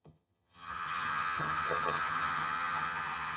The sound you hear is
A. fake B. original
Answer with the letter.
A